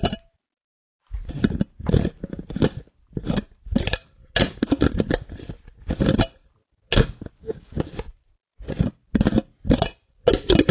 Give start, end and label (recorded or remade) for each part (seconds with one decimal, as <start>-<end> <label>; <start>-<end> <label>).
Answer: 0.0-7.4 recorded; 7.4-7.9 remade; 7.9-10.7 recorded

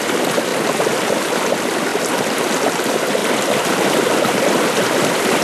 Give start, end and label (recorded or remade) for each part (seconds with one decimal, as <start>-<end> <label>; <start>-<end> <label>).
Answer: 0.0-5.4 recorded

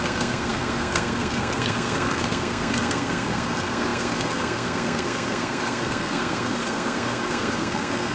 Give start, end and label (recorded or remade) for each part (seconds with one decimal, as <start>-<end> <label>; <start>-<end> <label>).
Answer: 0.0-8.1 remade

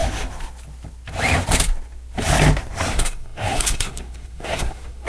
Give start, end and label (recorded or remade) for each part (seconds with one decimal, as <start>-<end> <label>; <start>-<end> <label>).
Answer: 0.0-2.9 recorded; 2.9-5.1 remade

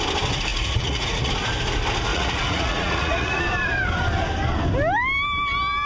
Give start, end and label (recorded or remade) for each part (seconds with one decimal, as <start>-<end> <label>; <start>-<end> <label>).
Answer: 0.0-0.5 recorded; 0.5-1.3 remade; 1.3-2.1 recorded; 2.1-3.4 remade; 3.4-5.9 recorded

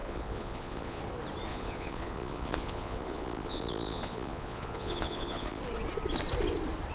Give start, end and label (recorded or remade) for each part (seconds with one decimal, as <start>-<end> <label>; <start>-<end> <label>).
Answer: 0.0-1.0 remade; 1.0-1.5 recorded; 1.5-5.6 remade; 5.6-6.9 recorded

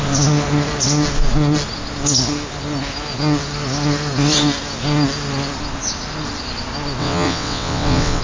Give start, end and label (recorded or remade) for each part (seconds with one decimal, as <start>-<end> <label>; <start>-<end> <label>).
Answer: 0.0-7.0 recorded; 7.0-8.2 remade